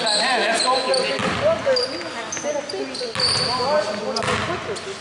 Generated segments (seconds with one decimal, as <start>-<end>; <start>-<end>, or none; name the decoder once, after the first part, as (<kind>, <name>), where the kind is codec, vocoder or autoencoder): none